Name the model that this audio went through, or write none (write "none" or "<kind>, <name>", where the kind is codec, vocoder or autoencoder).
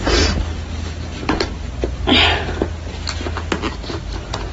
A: none